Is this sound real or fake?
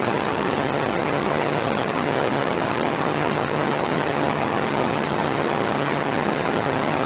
fake